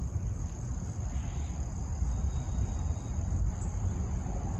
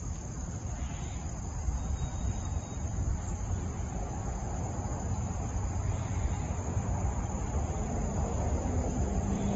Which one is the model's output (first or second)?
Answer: second